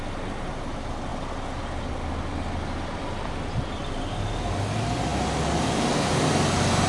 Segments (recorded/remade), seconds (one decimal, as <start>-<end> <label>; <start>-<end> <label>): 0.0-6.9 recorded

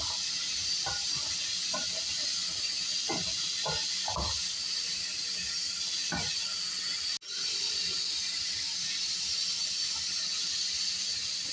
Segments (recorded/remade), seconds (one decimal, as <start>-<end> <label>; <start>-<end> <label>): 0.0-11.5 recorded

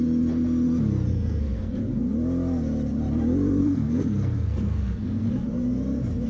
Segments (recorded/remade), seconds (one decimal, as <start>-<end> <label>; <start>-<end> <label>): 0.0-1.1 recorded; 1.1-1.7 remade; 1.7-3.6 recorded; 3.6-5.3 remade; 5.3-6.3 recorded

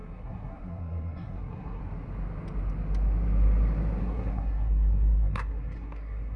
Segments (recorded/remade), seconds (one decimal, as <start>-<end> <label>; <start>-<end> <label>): 0.0-1.8 remade; 1.8-4.0 recorded; 4.0-6.4 remade